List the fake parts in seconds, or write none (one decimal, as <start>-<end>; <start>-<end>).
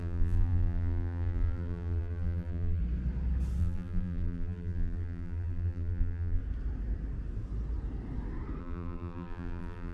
0.0-2.8; 3.6-6.4; 8.6-9.9